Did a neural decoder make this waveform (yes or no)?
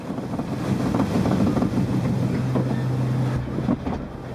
no